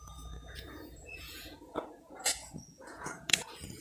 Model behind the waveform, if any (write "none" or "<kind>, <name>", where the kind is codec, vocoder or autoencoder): vocoder, Vocos